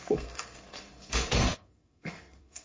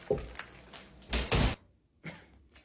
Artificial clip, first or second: first